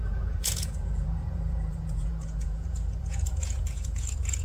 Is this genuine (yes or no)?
no